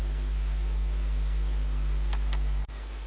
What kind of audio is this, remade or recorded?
remade